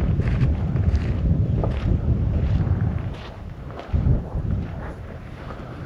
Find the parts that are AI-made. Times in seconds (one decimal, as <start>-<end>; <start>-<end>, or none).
0.0-1.6; 2.1-5.9